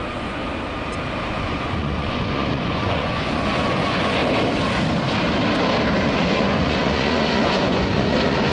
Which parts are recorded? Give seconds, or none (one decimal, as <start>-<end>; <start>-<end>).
0.4-1.3; 4.2-6.0